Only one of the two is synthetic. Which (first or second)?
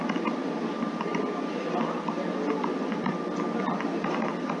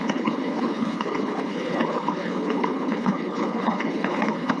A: second